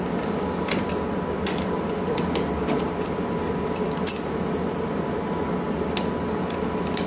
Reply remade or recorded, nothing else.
recorded